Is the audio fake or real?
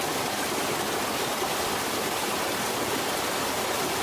real